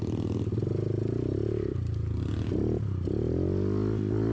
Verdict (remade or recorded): recorded